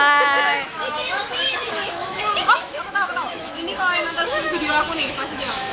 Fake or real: fake